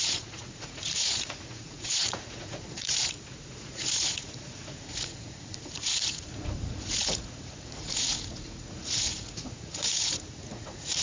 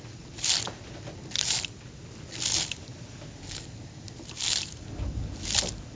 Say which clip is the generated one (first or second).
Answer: first